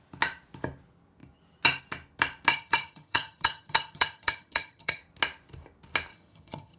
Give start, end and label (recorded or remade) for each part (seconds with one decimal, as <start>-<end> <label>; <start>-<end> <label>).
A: 0.0-2.5 recorded; 2.5-5.0 remade; 5.0-6.1 recorded; 6.1-6.8 remade